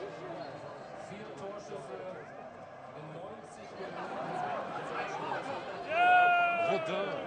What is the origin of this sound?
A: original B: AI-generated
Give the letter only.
A